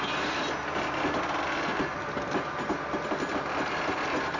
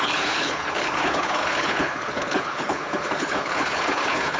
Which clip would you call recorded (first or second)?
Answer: first